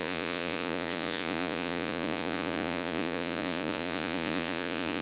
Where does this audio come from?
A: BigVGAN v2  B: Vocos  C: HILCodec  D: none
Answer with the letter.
B